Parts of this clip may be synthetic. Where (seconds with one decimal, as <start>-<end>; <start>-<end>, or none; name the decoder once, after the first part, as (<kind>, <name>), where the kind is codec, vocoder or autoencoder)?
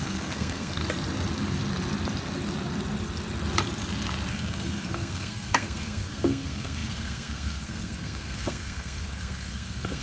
0.0-0.8 (codec, SNAC); 4.3-10.0